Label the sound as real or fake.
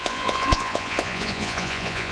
fake